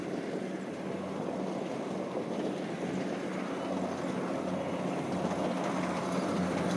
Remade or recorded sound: recorded